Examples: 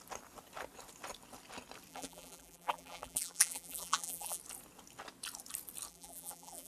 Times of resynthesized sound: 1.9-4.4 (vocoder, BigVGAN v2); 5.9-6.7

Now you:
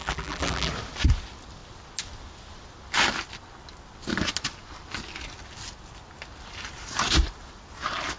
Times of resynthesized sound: 0.0-0.7 (vocoder, BigVGAN v2)

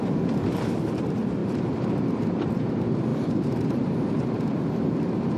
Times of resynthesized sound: 1.4-2.7 (vocoder, BigVGAN v2); 3.1-3.9

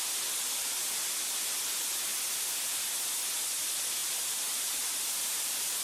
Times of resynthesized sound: 4.0-5.8 (vocoder, BigVGAN v2)

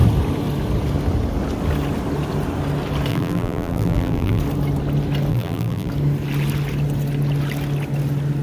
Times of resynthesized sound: 3.1-4.4 (vocoder, BigVGAN v2); 5.3-5.9

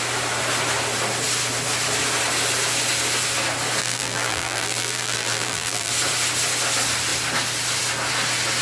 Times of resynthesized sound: 3.8-5.9 (vocoder, BigVGAN v2)